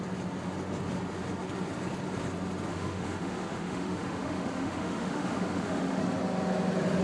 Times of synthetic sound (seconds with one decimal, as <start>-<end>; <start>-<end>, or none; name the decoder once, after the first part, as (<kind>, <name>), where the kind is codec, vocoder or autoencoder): 2.7-6.0 (autoencoder, DAC-VAE)